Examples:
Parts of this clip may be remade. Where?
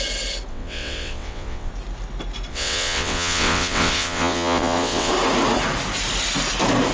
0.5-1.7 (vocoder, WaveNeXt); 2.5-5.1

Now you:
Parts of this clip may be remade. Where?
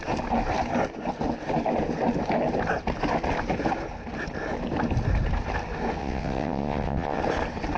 6.0-7.2 (vocoder, WaveNeXt)